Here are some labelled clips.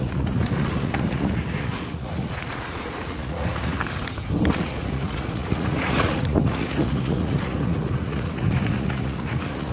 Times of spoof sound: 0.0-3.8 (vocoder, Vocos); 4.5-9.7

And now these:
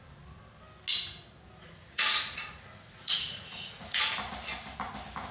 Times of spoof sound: 0.9-4.1 (vocoder, Vocos)

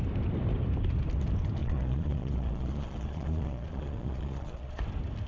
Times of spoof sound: 1.6-4.8 (vocoder, Vocos)